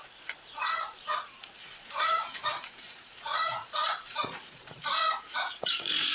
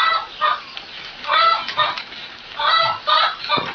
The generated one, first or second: first